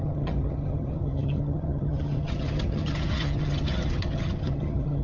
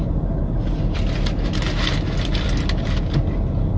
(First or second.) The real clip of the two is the second